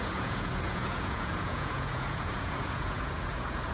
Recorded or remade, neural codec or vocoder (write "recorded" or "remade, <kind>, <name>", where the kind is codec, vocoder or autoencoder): remade, vocoder, Vocos